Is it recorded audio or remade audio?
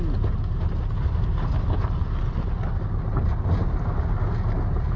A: recorded